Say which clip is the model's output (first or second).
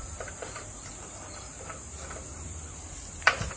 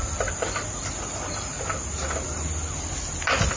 first